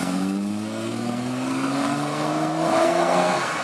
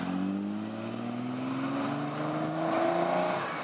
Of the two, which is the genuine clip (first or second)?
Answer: second